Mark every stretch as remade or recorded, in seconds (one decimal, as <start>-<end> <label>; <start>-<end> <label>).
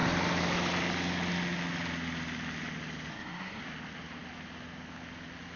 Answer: 0.0-3.1 recorded; 3.1-3.6 remade; 3.6-5.6 recorded